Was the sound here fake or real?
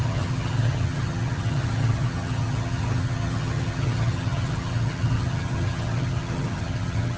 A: fake